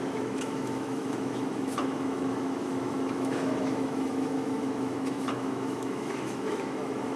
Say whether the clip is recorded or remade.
remade